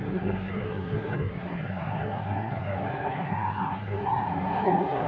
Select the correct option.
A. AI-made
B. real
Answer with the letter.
A